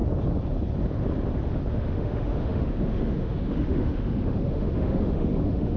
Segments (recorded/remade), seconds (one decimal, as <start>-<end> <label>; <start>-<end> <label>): 0.0-1.7 recorded; 1.7-5.8 remade